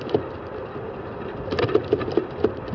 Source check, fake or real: real